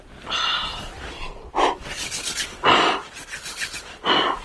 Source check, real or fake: fake